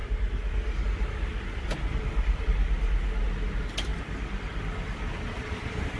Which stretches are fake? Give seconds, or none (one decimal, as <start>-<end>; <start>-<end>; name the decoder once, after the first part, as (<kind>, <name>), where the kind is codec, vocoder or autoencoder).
none